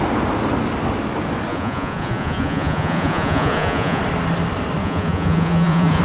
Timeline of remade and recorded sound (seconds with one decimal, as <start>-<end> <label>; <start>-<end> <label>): 0.0-1.5 recorded; 1.5-4.0 remade; 4.0-4.8 recorded; 4.8-6.0 remade

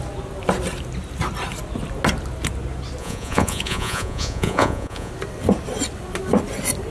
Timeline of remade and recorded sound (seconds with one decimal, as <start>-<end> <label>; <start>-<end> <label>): 0.0-3.0 recorded; 3.0-5.1 remade; 5.1-6.9 recorded

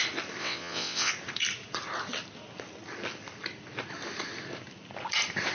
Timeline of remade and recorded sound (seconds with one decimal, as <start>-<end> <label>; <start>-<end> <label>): 0.0-0.4 recorded; 0.4-1.1 remade; 1.1-5.5 recorded

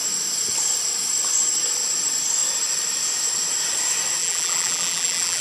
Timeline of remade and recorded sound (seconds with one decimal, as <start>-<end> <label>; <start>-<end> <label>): 0.0-4.2 recorded; 4.2-5.4 remade